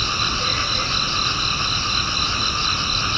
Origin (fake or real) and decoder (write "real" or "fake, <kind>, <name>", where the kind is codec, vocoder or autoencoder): real